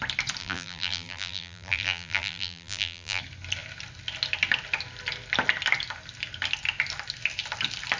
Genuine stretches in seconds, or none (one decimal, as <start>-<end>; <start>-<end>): 0.0-0.4; 3.2-8.0